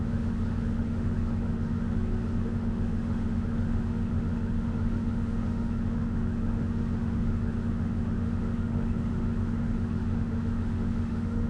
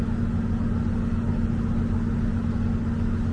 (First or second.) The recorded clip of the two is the second